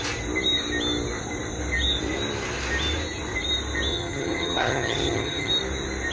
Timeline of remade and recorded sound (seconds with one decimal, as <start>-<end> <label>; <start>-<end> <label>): 0.0-3.9 recorded; 3.9-5.5 remade; 5.5-6.1 recorded